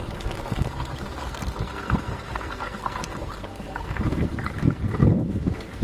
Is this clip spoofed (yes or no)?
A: yes